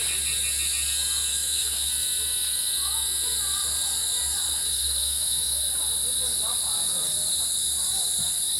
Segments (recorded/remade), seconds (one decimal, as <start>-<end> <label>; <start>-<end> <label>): 0.0-1.3 recorded; 1.3-1.9 remade; 1.9-5.0 recorded; 5.0-5.6 remade; 5.6-8.6 recorded